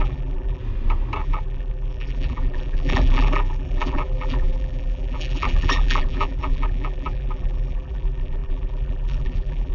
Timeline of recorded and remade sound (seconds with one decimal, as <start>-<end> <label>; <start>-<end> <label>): 0.0-0.6 remade; 0.6-1.2 recorded; 1.2-9.7 remade